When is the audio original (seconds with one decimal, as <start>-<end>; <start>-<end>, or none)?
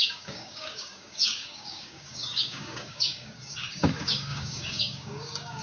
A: none